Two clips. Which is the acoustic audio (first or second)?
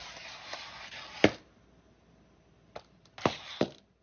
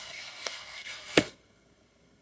first